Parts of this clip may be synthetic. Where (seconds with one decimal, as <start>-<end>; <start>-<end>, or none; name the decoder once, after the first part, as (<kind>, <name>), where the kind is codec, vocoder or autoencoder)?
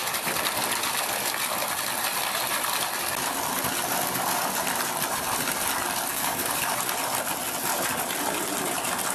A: 6.1-6.8 (codec, DAC)